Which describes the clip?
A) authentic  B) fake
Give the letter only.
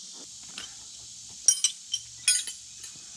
A